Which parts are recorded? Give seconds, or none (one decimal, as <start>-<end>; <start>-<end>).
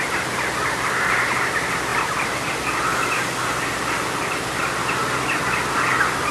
0.0-6.3